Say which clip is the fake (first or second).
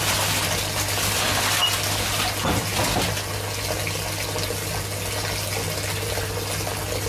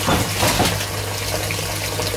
second